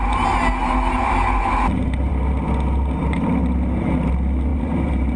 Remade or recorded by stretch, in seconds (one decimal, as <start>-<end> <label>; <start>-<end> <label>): 0.0-4.5 recorded; 4.5-5.2 remade

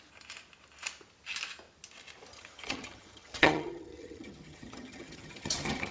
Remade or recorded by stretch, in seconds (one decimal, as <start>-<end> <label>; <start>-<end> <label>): 0.0-2.3 recorded; 2.3-5.9 remade

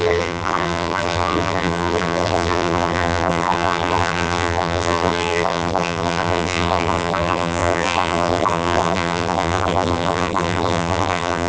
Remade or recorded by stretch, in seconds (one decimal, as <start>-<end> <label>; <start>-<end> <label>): 0.0-11.5 remade

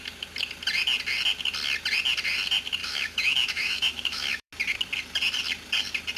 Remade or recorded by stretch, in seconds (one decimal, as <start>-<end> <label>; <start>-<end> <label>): 0.0-2.8 recorded; 2.8-4.5 remade; 4.5-6.2 recorded

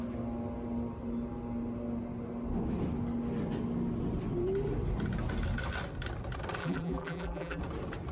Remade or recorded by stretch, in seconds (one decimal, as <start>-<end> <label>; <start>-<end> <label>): 0.0-6.6 recorded; 6.6-7.6 remade; 7.6-8.1 recorded